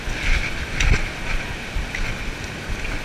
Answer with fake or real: real